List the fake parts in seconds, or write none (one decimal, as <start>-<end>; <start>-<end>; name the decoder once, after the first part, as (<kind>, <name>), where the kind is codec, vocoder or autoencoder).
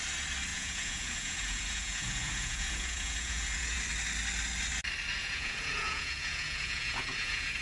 0.5-3.8 (vocoder, Vocos); 5.2-7.6